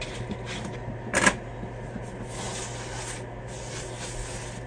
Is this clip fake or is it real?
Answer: real